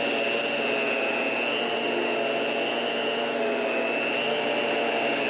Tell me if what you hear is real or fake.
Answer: real